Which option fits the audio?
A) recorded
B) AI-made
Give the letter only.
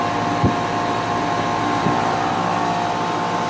A